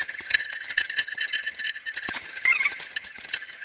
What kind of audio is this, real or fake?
fake